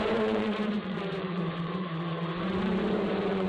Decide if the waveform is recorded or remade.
remade